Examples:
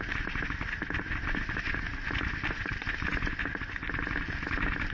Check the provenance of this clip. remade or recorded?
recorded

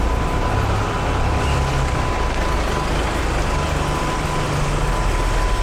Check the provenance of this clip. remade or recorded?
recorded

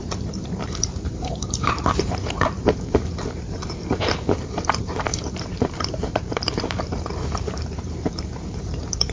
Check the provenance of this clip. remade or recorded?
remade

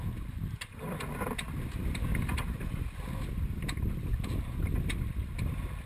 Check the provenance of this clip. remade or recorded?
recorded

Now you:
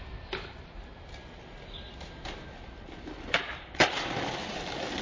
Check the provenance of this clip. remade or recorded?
recorded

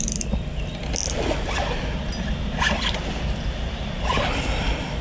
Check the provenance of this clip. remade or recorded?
recorded